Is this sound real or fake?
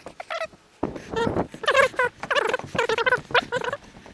real